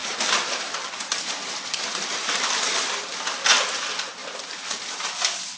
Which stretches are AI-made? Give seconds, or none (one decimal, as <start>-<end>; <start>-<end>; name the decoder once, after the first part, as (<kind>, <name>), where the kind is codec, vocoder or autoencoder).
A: 0.0-2.7 (vocoder, BigVGAN v2); 4.2-5.1